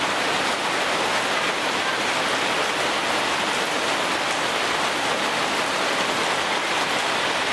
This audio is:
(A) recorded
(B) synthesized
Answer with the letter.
A